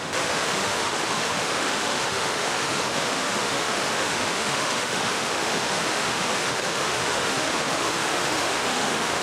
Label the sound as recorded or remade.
remade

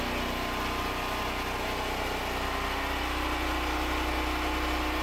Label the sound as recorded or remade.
recorded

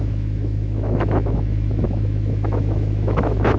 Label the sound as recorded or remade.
remade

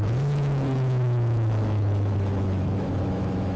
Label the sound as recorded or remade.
remade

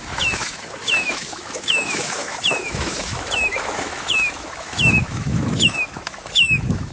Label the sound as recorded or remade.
remade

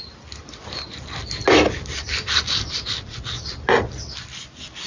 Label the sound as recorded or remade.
recorded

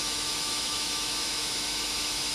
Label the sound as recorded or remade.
remade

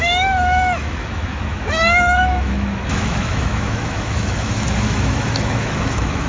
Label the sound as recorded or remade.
remade